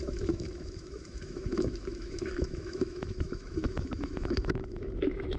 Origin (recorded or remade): remade